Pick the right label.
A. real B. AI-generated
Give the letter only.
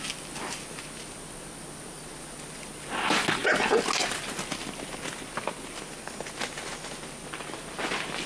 A